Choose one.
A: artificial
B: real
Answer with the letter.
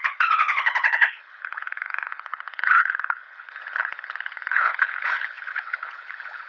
A